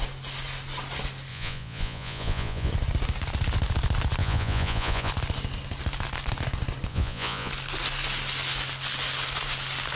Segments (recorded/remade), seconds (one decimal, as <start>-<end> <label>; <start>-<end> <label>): 0.0-1.3 recorded; 1.3-2.7 remade; 2.7-4.2 recorded; 4.2-5.1 remade; 5.1-6.9 recorded; 6.9-7.5 remade; 7.5-10.0 recorded